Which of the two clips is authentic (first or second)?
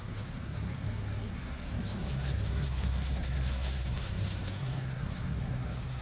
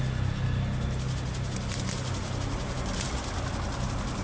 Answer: second